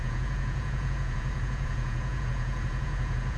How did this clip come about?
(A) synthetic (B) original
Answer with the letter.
A